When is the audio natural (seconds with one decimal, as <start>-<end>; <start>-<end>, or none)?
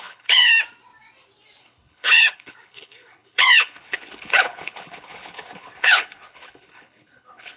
0.5-1.6